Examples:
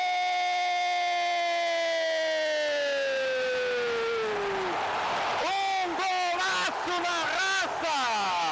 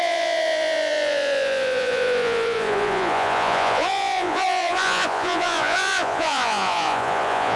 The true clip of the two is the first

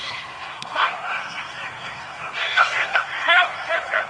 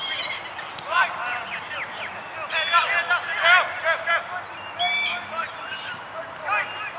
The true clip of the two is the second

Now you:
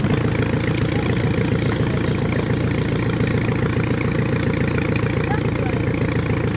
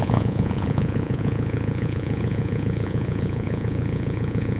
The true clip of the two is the first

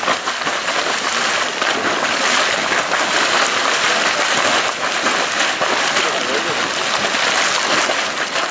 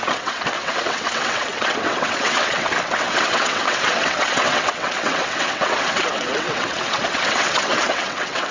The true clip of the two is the first